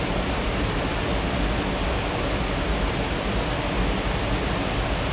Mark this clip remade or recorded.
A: recorded